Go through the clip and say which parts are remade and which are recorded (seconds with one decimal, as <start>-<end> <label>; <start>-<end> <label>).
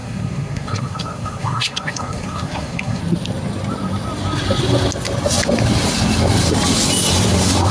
0.0-3.0 remade; 3.0-7.7 recorded